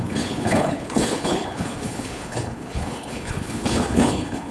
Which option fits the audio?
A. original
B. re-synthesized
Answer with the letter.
B